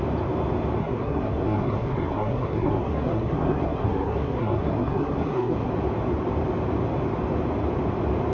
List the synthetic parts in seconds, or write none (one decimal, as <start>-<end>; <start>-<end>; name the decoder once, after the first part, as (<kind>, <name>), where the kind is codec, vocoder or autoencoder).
0.8-5.7 (codec, SNAC)